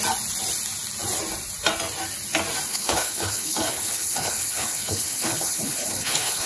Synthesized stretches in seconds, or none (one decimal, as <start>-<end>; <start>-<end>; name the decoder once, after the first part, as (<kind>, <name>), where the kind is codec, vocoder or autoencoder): 2.7-6.5 (codec, HILCodec)